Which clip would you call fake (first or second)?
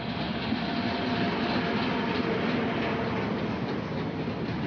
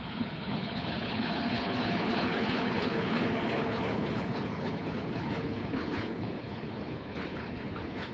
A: second